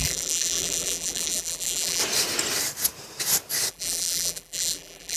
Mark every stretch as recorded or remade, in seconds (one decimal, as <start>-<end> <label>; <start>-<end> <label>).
0.0-2.0 remade; 2.0-3.7 recorded; 3.7-5.2 remade